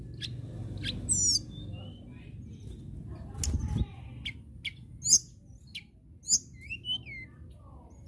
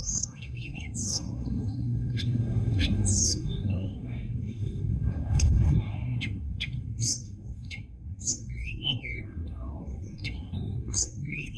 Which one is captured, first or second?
first